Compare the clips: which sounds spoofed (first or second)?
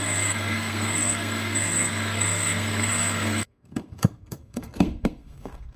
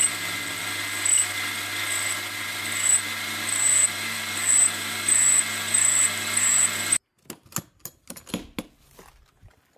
first